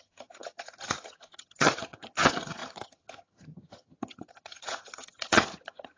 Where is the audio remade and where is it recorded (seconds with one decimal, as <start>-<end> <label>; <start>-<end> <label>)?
0.0-6.0 remade